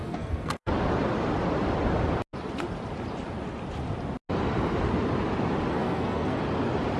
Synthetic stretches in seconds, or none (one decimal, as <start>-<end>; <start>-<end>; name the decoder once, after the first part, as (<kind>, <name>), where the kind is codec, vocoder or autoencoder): 0.0-0.7 (codec, SNAC); 5.7-6.4